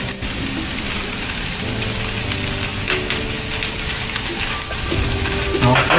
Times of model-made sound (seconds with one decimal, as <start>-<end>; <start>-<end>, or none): none